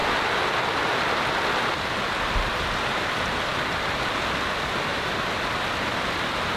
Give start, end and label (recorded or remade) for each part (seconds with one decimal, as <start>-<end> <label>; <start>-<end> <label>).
0.0-3.5 recorded; 3.5-4.2 remade; 4.2-4.9 recorded; 4.9-6.0 remade; 6.0-6.6 recorded